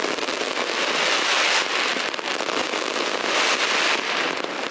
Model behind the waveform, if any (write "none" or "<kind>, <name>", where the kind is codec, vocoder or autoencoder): none